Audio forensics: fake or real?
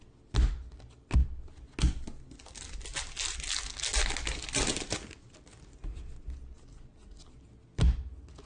real